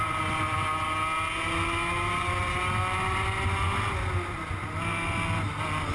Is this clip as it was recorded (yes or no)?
yes